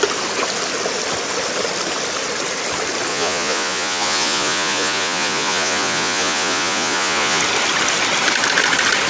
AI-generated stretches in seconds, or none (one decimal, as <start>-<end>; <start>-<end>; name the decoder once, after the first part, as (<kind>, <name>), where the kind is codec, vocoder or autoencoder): 3.1-7.4 (vocoder, Vocos)